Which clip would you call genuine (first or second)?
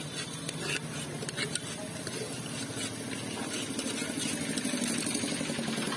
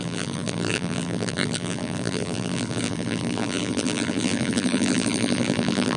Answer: first